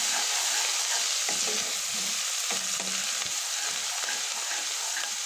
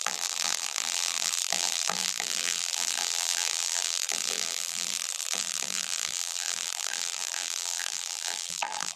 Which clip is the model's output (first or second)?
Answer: second